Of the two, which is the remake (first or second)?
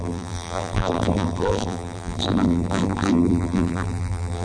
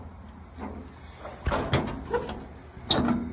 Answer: first